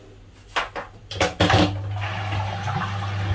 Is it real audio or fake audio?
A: real